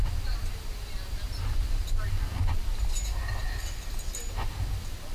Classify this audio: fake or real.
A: real